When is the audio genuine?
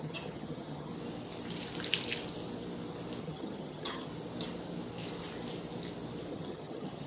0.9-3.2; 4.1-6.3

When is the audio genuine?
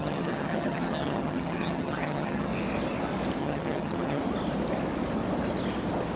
2.5-3.4; 4.2-6.2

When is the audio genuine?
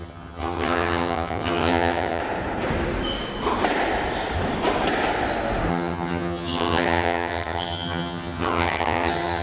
2.2-5.7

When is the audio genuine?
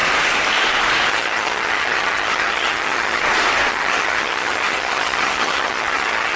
0.0-1.1; 3.2-3.7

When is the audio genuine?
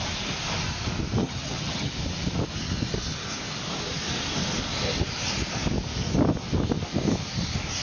0.0-1.2; 1.9-7.8